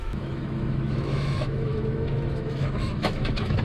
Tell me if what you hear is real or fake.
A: fake